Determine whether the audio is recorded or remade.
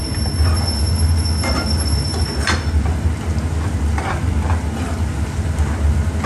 recorded